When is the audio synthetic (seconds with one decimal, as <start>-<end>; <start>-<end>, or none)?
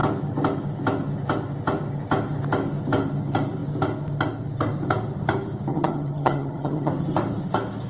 5.7-6.9